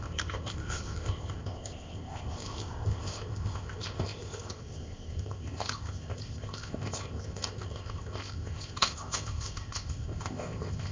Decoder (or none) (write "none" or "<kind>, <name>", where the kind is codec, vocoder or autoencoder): codec, ZipCodec